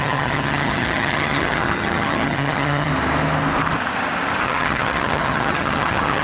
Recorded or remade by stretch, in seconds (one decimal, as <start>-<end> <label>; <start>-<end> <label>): 0.0-2.9 remade; 2.9-4.4 recorded; 4.4-6.2 remade